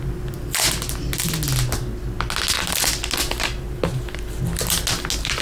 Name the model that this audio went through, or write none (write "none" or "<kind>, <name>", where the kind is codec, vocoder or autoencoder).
none